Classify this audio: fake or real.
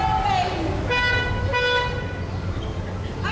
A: real